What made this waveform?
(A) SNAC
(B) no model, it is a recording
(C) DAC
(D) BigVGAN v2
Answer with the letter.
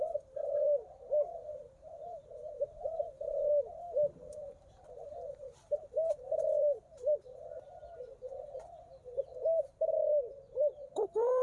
D